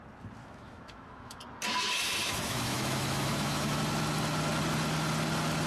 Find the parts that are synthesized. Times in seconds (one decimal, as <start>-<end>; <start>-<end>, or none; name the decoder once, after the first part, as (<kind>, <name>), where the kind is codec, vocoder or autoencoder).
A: 0.4-1.4 (autoencoder, DAC-VAE); 2.2-3.8